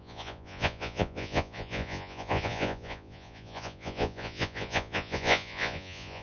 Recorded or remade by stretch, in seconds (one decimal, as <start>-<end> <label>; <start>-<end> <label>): 0.0-6.2 remade